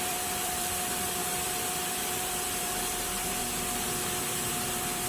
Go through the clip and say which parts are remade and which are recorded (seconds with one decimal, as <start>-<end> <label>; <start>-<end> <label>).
0.0-3.4 remade; 3.4-4.5 recorded; 4.5-5.1 remade